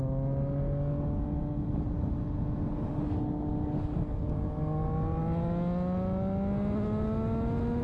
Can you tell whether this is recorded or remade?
recorded